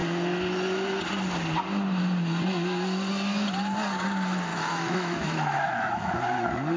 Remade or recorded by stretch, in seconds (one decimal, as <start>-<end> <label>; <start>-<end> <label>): 0.0-4.5 recorded; 4.5-6.1 remade; 6.1-6.8 recorded